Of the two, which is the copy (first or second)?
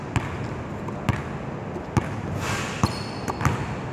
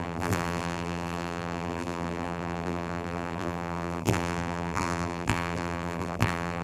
second